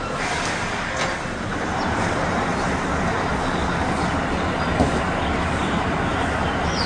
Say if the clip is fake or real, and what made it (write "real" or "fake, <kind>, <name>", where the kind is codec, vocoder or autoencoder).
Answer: real